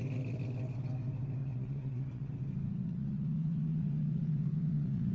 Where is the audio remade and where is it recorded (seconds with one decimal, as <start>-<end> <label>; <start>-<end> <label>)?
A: 0.0-1.4 recorded; 1.4-2.3 remade; 2.3-2.8 recorded; 2.8-5.1 remade